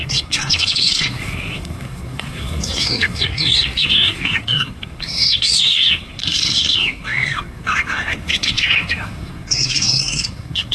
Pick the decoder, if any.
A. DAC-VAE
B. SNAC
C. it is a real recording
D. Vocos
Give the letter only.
B